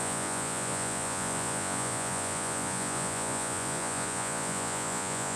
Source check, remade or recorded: remade